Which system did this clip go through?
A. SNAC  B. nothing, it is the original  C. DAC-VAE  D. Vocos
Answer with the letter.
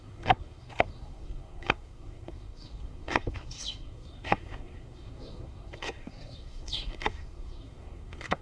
A